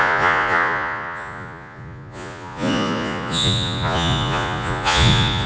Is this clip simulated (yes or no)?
yes